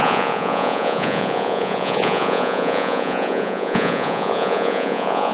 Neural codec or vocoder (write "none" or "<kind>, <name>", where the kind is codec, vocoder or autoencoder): vocoder, Vocos